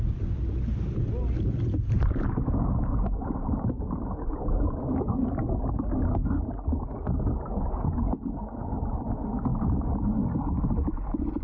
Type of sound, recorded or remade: recorded